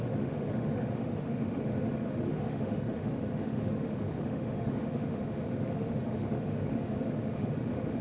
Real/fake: fake